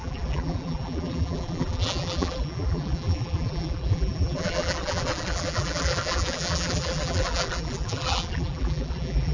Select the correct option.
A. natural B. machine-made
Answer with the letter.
B